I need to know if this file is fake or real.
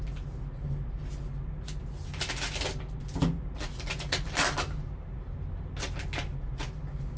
real